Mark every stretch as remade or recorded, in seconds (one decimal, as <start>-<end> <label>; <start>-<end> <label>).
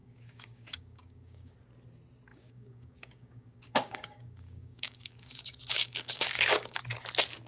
0.0-1.5 remade; 1.5-2.3 recorded; 2.3-6.8 remade; 6.8-7.5 recorded